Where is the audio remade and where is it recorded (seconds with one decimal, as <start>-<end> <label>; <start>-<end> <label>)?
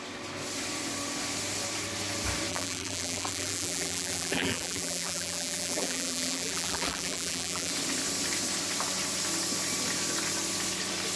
0.0-2.5 recorded; 2.5-7.7 remade; 7.7-11.2 recorded